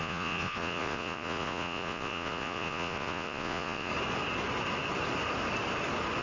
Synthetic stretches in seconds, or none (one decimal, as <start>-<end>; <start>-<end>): 0.0-3.9